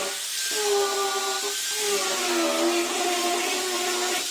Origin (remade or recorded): recorded